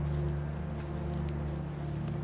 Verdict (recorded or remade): recorded